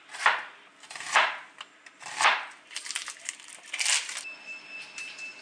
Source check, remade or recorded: recorded